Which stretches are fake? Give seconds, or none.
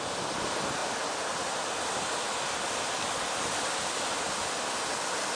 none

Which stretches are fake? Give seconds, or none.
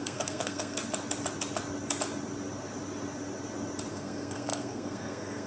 0.0-0.8 (codec, SNAC); 3.9-5.5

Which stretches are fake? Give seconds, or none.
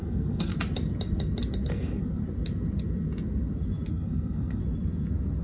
0.0-0.5 (codec, SNAC); 1.7-2.2; 3.9-4.6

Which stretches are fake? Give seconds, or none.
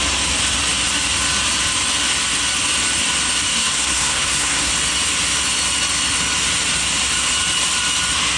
3.5-4.7 (codec, SNAC)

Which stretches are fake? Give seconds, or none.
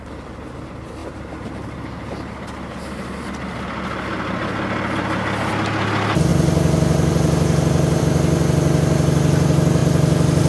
none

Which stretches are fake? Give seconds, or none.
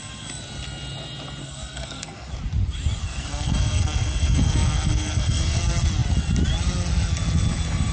1.4-2.3 (codec, SNAC); 3.0-5.6